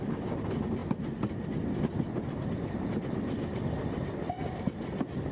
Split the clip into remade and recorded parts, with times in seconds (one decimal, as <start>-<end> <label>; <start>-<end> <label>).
0.0-5.3 recorded